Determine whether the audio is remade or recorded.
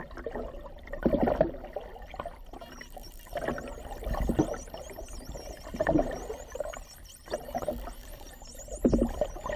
recorded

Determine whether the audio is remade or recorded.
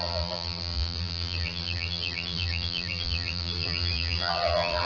remade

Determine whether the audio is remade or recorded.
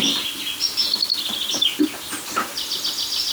recorded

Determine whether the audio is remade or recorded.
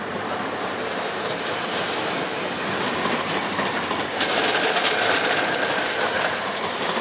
remade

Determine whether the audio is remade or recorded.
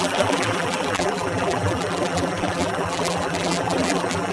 remade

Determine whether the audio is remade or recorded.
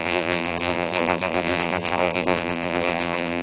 remade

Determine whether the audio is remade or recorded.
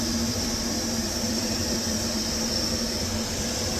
remade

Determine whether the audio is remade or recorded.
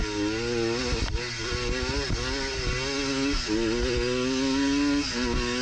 recorded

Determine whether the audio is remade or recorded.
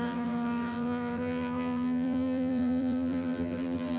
remade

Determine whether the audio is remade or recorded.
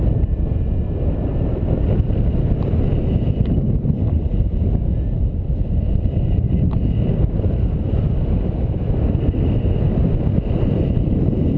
remade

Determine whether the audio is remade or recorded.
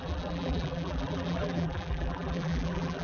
remade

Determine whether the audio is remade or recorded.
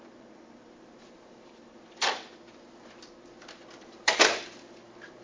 remade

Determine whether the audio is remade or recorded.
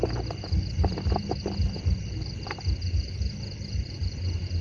recorded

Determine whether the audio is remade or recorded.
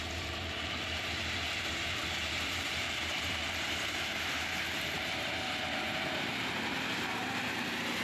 remade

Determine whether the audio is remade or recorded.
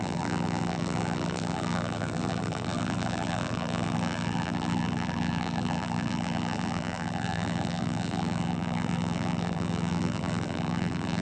remade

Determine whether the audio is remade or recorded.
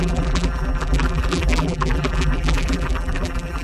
remade